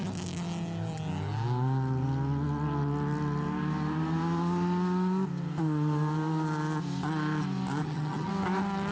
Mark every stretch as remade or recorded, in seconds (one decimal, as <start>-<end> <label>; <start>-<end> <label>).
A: 0.0-7.8 recorded; 7.8-8.3 remade; 8.3-8.9 recorded